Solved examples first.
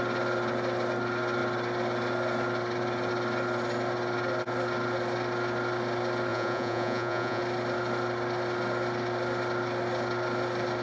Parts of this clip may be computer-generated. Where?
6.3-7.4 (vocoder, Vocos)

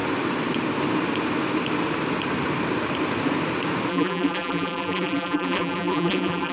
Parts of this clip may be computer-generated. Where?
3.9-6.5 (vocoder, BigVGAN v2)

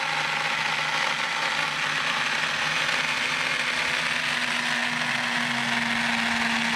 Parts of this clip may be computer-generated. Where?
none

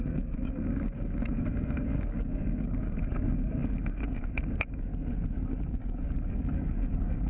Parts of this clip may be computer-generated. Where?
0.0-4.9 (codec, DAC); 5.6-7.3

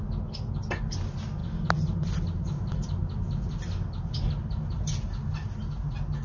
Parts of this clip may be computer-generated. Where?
none

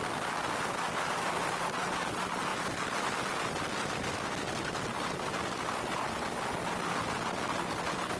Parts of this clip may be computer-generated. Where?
none